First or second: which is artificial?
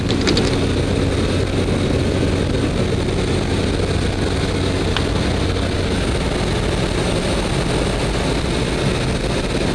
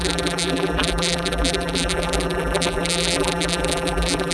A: second